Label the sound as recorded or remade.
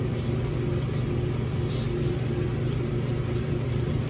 recorded